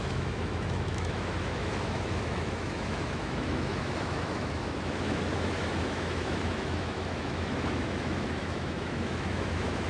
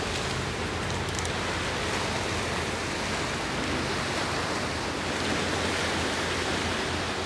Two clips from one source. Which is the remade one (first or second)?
first